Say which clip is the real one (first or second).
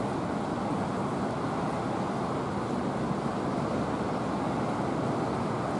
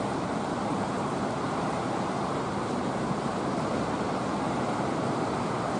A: first